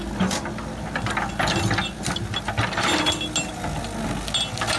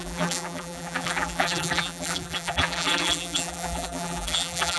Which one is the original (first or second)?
first